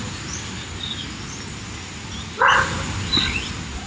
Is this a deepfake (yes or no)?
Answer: no